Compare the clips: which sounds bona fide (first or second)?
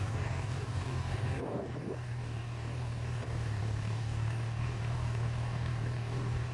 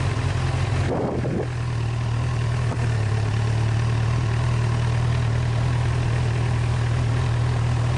second